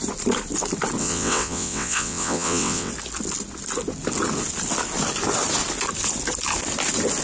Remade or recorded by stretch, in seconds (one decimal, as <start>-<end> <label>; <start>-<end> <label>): 0.0-1.0 recorded; 1.0-2.9 remade; 2.9-7.2 recorded